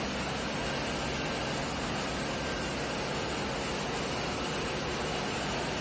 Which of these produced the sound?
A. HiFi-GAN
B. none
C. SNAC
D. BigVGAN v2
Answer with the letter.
B